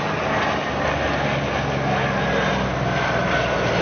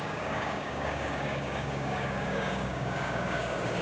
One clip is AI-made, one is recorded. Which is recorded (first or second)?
first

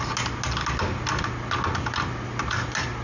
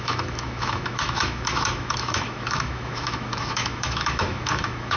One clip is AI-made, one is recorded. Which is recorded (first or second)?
first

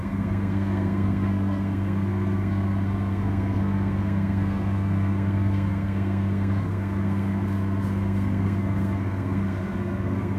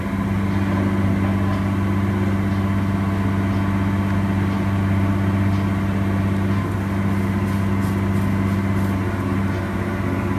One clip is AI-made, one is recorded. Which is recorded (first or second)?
second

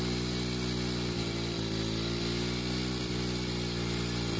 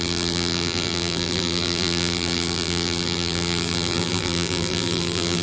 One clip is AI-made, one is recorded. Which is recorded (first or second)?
first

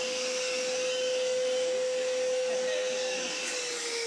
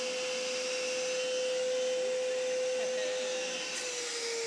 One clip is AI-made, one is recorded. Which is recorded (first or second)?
second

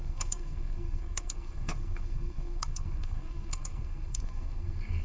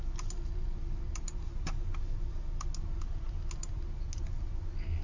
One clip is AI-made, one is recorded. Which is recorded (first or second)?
second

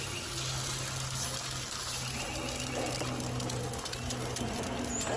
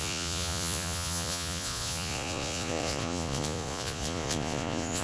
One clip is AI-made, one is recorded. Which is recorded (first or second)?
first